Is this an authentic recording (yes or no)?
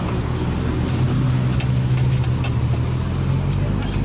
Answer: yes